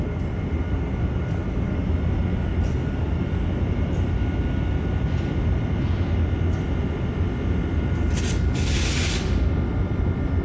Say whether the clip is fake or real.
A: real